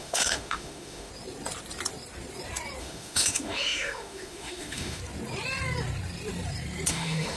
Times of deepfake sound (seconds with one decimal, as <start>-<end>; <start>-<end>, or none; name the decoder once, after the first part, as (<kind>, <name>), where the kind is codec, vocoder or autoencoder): 0.0-1.1 (autoencoder, DAC-VAE); 2.8-5.0; 6.9-7.4